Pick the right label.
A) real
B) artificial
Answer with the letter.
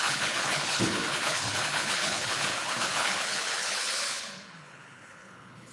B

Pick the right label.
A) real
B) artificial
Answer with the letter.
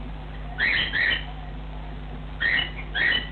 A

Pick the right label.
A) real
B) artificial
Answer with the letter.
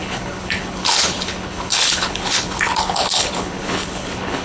B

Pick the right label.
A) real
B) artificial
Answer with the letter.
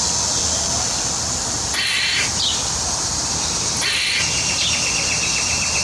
A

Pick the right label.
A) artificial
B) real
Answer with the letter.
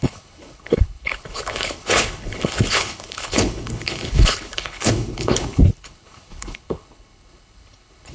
A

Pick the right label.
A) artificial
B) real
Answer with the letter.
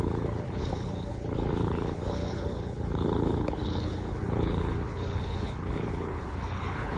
A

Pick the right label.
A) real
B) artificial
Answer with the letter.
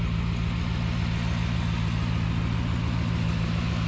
A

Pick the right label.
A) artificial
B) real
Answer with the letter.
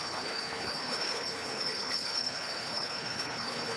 A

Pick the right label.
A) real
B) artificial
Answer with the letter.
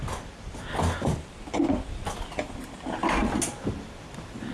A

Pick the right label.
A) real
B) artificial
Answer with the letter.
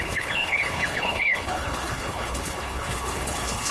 B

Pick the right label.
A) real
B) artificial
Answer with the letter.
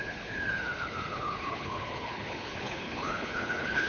B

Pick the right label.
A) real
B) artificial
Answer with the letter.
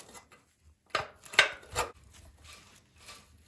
A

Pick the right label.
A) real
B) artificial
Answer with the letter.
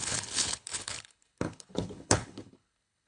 B